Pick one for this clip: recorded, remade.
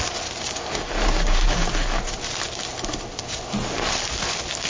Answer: recorded